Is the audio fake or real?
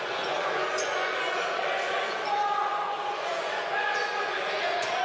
fake